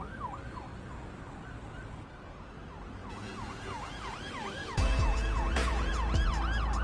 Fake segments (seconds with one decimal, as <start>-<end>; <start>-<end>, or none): 3.0-4.1; 4.6-5.9